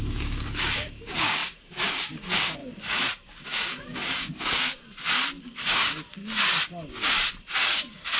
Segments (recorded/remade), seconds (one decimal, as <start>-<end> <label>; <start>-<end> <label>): 0.0-2.6 remade; 2.6-3.1 recorded; 3.1-4.8 remade; 4.8-5.4 recorded; 5.4-6.2 remade; 6.2-7.5 recorded; 7.5-8.2 remade